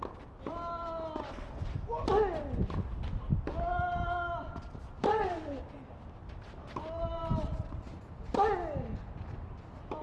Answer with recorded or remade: recorded